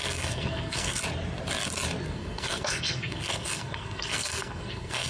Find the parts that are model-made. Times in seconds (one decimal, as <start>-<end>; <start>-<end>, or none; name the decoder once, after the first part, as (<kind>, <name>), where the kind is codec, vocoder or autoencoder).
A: 0.0-1.0 (codec, SNAC); 2.0-5.1